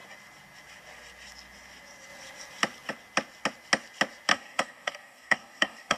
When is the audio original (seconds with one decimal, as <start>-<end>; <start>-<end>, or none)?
0.0-4.3